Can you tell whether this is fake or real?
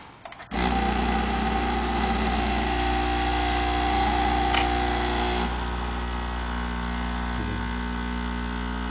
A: real